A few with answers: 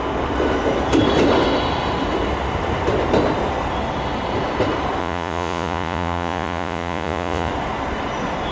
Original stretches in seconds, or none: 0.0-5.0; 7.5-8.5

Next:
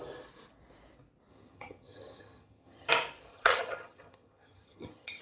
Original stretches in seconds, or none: 0.0-1.3; 2.9-3.3